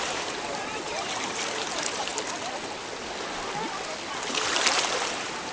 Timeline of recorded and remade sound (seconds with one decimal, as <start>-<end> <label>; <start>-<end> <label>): 0.0-2.1 remade; 2.1-4.3 recorded; 4.3-5.5 remade